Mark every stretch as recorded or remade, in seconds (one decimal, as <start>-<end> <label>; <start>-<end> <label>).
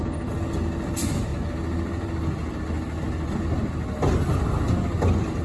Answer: 0.0-5.4 recorded